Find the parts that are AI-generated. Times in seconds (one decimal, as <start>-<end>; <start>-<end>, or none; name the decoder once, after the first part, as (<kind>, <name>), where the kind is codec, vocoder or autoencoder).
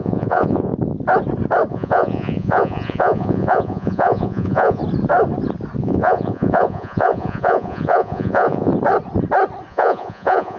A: 0.0-0.7 (vocoder, Vocos); 1.7-4.8; 5.8-8.7; 9.7-10.6